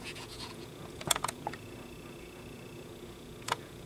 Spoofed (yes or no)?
yes